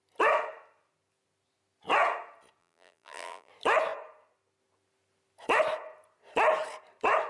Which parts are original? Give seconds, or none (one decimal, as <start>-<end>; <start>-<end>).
0.0-2.6; 3.5-7.3